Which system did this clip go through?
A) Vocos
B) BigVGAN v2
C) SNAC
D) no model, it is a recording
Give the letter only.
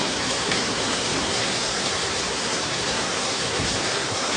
C